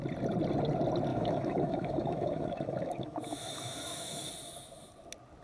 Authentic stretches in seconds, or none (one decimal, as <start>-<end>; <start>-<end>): 0.0-1.1; 4.3-5.4